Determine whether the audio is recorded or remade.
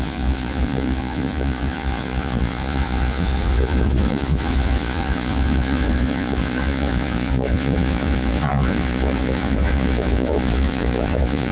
remade